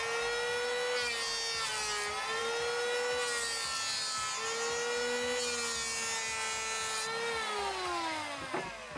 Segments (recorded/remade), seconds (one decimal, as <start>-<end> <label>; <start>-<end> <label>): 0.0-9.0 recorded

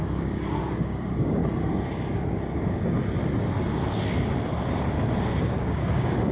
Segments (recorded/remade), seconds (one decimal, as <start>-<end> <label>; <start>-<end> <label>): 0.0-1.4 remade; 1.4-5.2 recorded; 5.2-6.3 remade

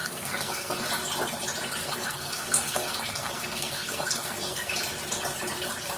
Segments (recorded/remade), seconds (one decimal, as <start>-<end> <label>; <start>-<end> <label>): 0.0-0.9 remade; 0.9-1.8 recorded; 1.8-4.7 remade; 4.7-6.0 recorded

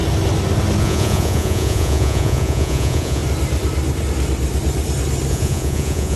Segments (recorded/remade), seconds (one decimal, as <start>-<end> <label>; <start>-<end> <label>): 0.0-0.8 recorded; 0.8-3.2 remade; 3.2-5.3 recorded; 5.3-6.2 remade